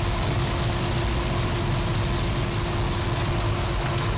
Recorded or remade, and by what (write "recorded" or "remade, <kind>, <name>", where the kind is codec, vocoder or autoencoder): recorded